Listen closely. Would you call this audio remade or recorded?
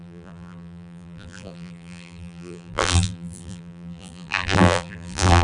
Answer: remade